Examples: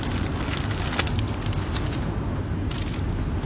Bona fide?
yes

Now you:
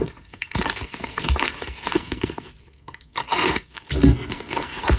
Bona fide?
no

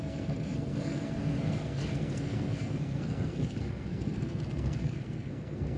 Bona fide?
no